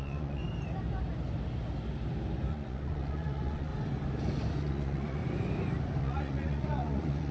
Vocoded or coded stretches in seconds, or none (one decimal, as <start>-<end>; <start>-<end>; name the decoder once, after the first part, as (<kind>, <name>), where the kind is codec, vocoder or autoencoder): 0.0-0.4 (vocoder, Vocos); 2.5-3.7; 4.6-5.2; 6.0-7.3